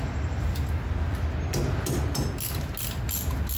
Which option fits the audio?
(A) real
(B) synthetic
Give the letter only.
A